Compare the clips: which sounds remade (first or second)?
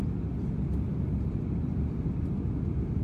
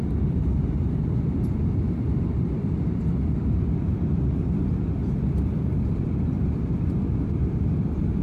second